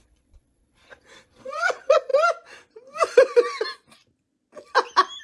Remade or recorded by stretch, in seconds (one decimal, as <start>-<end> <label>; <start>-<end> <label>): 0.0-2.1 remade; 2.1-5.2 recorded